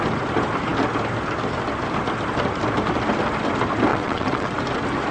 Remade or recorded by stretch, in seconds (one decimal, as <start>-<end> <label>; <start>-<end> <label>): 0.0-3.9 recorded; 3.9-4.6 remade; 4.6-5.1 recorded